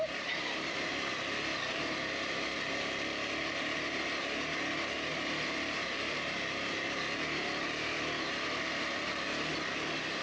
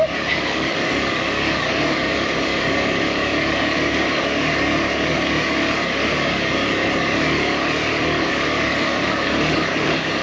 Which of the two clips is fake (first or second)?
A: second